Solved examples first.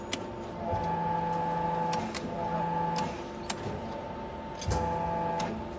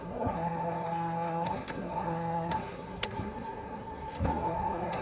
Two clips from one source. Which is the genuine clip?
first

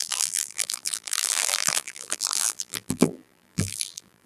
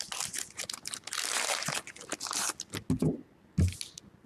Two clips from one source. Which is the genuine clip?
second